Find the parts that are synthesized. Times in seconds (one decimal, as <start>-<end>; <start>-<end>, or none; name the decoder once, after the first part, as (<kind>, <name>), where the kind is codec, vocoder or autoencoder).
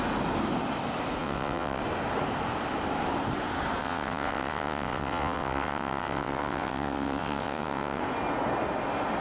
1.2-1.8 (vocoder, WaveNeXt); 3.8-8.0